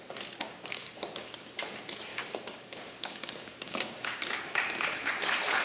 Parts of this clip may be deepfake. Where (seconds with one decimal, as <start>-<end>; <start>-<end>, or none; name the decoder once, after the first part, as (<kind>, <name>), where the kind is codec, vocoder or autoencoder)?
0.4-1.6 (codec, DAC); 2.1-5.1

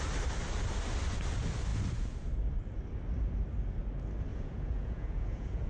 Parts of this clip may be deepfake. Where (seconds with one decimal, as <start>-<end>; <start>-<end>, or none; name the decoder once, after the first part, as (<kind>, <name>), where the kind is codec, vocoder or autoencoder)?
4.3-5.7 (vocoder, Vocos)

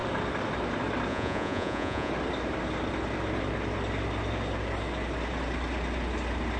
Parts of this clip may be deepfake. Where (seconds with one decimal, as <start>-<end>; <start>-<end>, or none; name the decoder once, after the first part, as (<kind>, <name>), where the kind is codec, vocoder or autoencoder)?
1.1-2.1 (vocoder, Vocos)

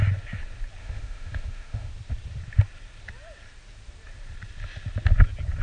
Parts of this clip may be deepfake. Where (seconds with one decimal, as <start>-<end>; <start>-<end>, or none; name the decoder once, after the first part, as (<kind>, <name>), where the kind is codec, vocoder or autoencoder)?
0.8-1.9 (autoencoder, DAC-VAE)

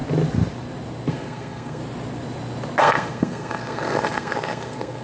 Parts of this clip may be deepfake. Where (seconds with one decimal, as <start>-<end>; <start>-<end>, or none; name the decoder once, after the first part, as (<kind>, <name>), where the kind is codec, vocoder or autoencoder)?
1.1-1.8 (codec, SNAC); 2.8-5.0